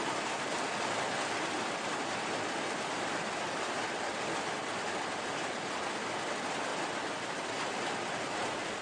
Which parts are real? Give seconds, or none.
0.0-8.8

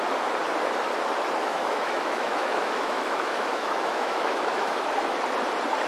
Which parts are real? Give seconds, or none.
0.0-1.4; 4.9-5.9